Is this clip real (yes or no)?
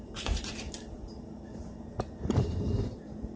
no